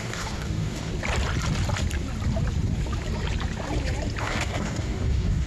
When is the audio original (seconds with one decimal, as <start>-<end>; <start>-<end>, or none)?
0.9-4.2